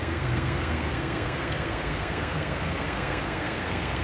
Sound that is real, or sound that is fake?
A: fake